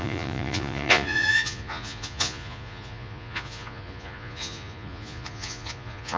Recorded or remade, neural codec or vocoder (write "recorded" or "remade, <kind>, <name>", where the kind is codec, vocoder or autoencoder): remade, vocoder, Vocos